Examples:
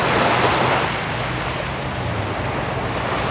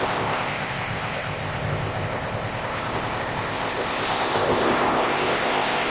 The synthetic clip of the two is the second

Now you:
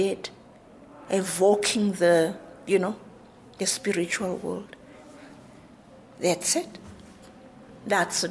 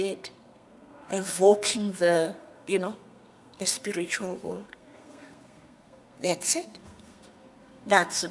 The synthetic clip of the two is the second